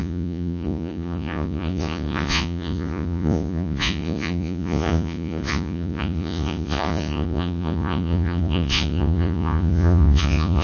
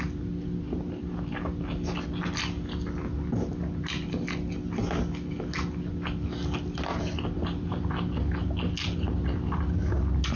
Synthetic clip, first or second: first